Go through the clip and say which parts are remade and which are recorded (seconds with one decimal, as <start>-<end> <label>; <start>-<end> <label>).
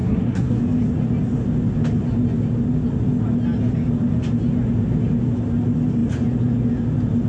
0.0-0.6 remade; 0.6-7.3 recorded